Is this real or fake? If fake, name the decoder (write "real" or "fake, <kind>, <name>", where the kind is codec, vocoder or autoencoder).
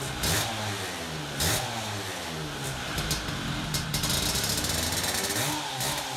real